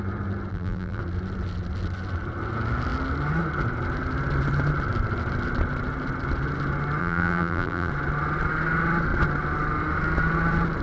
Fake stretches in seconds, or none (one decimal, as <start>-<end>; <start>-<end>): 0.5-1.0; 7.0-7.9